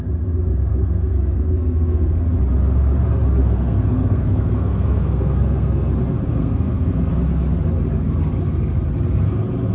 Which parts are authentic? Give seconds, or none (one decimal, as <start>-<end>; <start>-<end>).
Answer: 0.0-0.7; 2.2-3.4; 5.9-6.4; 7.1-9.7